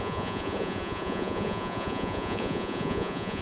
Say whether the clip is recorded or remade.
remade